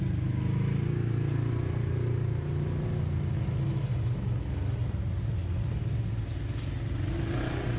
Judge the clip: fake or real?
real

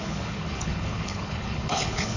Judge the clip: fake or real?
fake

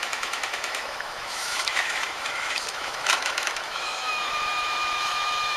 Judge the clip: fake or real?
fake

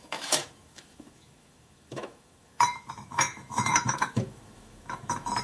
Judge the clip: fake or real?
fake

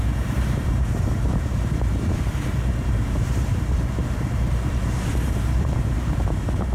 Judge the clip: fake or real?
fake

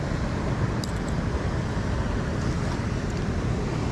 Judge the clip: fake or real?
real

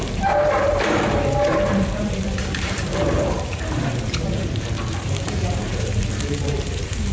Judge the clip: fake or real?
fake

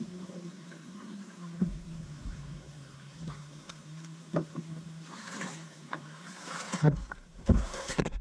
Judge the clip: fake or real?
fake